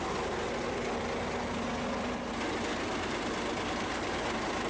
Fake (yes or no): no